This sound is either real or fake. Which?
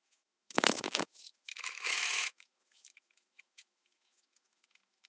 fake